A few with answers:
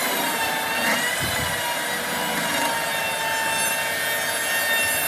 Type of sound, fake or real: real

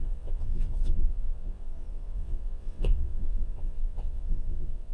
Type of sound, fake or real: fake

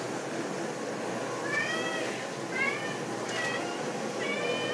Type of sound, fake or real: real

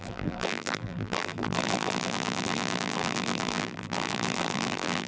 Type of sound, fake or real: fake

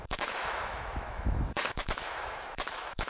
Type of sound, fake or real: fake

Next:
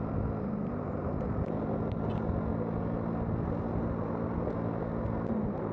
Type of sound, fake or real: real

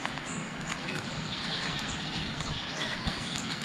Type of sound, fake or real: fake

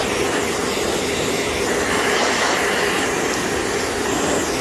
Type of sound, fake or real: real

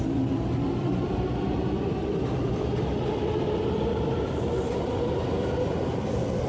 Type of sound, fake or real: fake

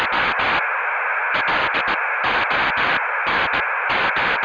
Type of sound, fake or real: real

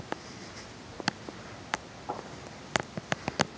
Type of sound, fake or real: real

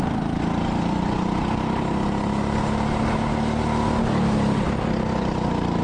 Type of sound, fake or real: real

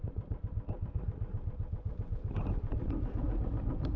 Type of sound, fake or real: real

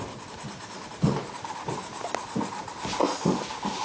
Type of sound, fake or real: real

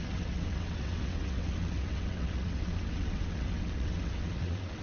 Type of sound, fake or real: fake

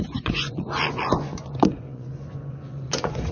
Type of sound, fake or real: fake